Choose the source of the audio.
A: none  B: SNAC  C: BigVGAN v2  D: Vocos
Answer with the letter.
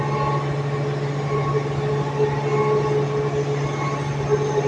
A